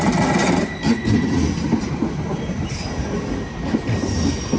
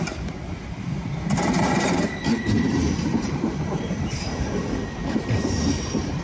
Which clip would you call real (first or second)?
first